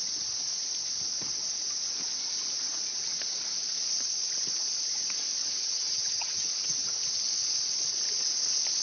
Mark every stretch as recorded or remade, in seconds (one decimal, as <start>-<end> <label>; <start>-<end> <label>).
0.0-5.4 recorded; 5.4-7.0 remade; 7.0-8.8 recorded